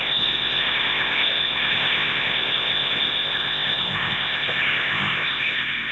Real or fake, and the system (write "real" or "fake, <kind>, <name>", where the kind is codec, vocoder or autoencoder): fake, codec, ZipCodec